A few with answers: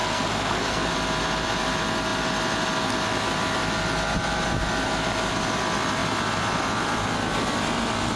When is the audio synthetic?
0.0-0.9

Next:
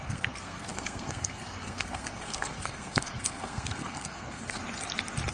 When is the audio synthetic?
0.0-4.6

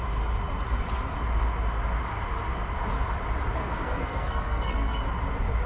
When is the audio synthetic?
3.6-5.0

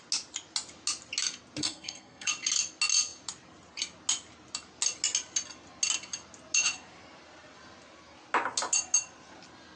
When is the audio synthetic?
1.6-2.3

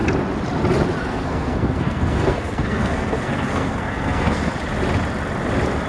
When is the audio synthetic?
1.0-4.5

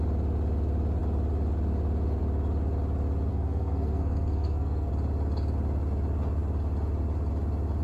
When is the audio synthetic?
3.3-4.9